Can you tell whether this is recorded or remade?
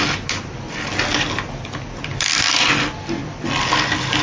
recorded